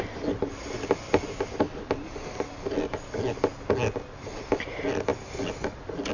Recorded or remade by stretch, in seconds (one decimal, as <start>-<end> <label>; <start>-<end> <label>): 0.0-6.1 recorded